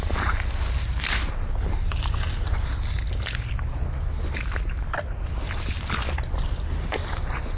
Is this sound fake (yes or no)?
no